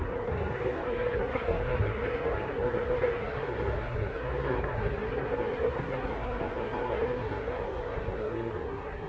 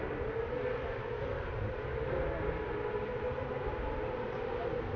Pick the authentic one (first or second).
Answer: second